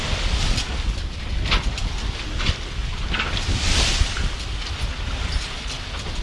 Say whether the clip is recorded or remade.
recorded